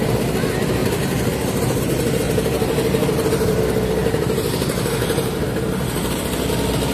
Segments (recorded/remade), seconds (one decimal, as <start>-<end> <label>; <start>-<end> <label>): 0.0-0.8 recorded; 0.8-3.6 remade; 3.6-4.0 recorded; 4.0-6.2 remade; 6.2-6.9 recorded